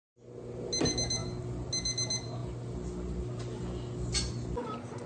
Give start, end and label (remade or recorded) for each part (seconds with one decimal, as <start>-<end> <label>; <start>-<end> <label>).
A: 0.0-5.1 recorded